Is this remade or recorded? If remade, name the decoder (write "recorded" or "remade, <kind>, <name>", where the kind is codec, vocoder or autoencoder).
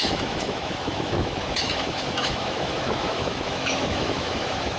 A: remade, autoencoder, DAC-VAE